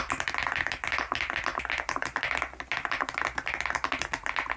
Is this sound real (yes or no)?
yes